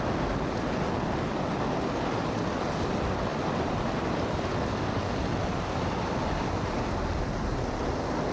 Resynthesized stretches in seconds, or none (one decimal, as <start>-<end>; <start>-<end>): none